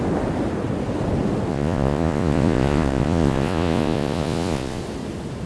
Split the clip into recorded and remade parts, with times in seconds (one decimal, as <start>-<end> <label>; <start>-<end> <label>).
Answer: 0.0-1.5 recorded; 1.5-4.8 remade; 4.8-5.5 recorded